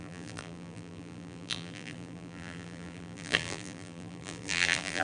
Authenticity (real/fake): fake